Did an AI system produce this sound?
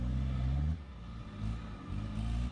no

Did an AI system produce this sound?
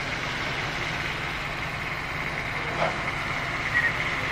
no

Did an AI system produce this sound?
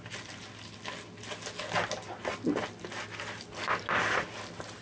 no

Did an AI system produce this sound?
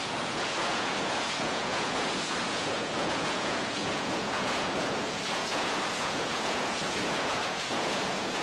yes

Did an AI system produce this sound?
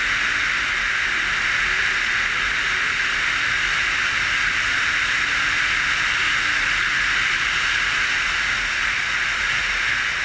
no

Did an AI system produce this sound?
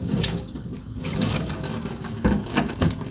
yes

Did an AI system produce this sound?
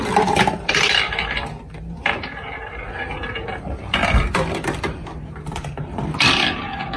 yes